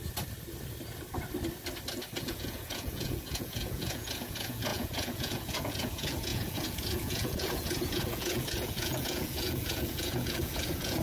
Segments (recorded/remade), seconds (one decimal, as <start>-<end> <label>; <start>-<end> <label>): 0.0-2.2 recorded; 2.2-11.0 remade